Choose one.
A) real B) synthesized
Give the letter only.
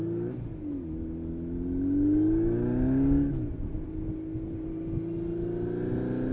A